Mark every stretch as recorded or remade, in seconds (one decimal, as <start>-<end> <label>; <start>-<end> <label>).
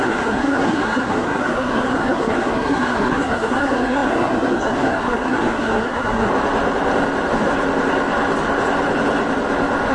0.0-6.3 remade; 6.3-9.9 recorded